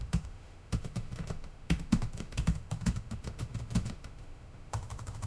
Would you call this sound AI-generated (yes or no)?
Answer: yes